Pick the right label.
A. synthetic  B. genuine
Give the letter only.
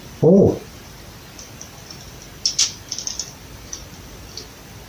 B